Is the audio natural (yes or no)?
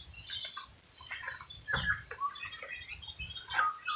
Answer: yes